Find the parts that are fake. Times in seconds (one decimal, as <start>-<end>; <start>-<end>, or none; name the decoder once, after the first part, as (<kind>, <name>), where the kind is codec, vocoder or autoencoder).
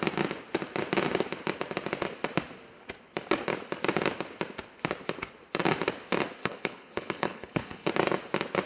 6.4-7.9 (codec, HILCodec)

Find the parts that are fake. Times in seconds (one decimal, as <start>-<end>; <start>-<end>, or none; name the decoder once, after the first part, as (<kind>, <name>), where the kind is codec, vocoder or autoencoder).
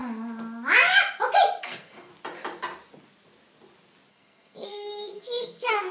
1.6-2.1 (codec, SNAC); 4.1-5.9